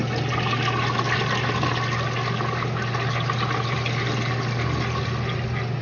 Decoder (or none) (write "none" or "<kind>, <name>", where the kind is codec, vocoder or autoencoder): none